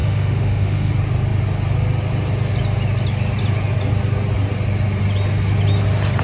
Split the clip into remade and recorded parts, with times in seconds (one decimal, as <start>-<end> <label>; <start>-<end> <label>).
0.0-0.9 remade; 0.9-6.2 recorded